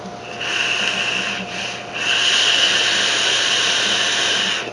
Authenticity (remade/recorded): recorded